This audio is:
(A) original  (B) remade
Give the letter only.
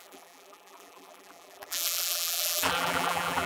B